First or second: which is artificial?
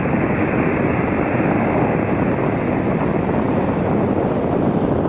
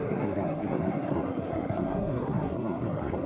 second